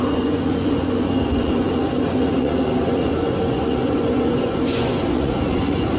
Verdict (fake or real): fake